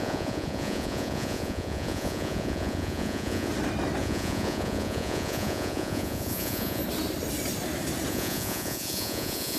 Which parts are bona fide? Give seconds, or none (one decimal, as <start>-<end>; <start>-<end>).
3.5-4.0; 6.8-8.1